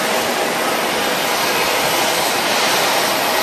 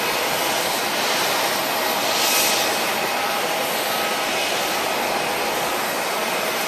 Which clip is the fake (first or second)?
first